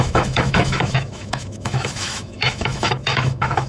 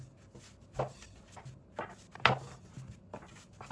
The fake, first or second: first